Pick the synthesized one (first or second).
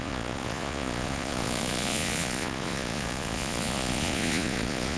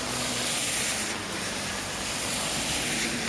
first